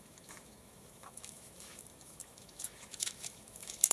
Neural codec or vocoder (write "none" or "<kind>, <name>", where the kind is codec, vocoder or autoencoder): autoencoder, DAC-VAE